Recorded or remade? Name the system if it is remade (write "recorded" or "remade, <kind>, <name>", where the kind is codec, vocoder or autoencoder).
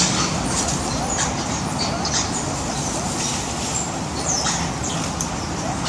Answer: remade, vocoder, BigVGAN v2